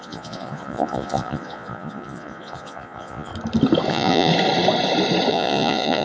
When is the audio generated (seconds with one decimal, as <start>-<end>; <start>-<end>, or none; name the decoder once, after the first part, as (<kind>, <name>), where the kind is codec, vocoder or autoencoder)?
0.0-3.3 (vocoder, Vocos); 3.9-4.3; 5.3-6.0